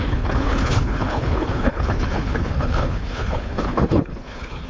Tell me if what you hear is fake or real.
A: fake